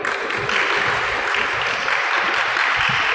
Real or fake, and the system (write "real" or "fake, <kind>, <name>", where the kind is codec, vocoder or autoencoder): real